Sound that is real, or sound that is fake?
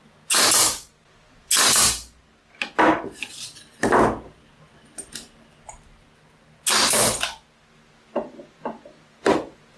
real